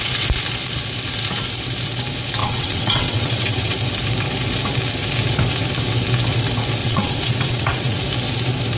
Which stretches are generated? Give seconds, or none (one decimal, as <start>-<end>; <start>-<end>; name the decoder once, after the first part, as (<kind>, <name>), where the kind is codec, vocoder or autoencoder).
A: 2.4-3.7 (vocoder, WaveNeXt); 6.8-8.0